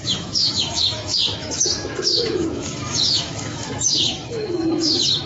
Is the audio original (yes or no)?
no